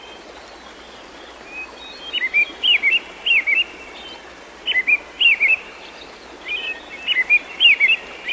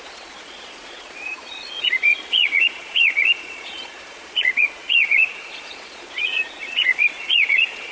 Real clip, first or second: first